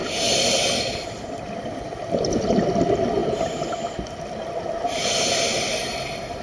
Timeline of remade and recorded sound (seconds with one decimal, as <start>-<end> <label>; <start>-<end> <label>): 0.0-6.4 remade